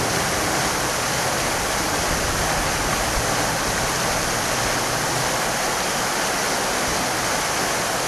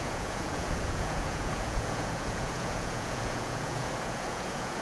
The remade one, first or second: second